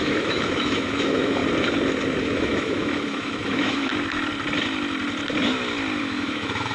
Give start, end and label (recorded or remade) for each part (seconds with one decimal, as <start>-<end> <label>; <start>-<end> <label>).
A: 0.0-1.4 remade; 1.4-2.2 recorded; 2.2-3.9 remade; 3.9-6.0 recorded; 6.0-6.7 remade